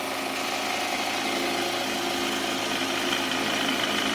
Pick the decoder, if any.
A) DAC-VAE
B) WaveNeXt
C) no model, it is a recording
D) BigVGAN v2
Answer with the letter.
C